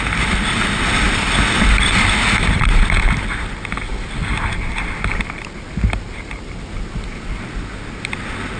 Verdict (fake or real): real